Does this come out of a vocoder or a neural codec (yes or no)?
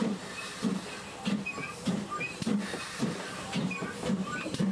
yes